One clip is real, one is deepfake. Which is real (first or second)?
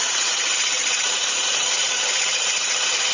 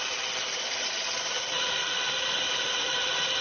second